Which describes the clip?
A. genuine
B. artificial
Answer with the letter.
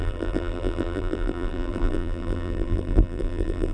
B